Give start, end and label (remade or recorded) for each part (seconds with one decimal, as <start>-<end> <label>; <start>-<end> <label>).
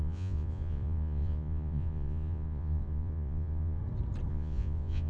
0.0-3.8 remade; 3.8-4.3 recorded; 4.3-5.1 remade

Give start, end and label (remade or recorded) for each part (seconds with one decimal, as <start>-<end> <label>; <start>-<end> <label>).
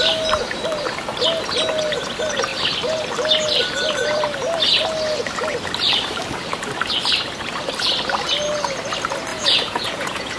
0.0-9.3 recorded; 9.3-10.4 remade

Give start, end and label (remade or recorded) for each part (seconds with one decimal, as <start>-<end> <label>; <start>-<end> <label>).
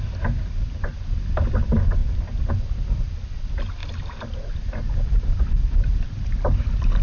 0.0-7.0 recorded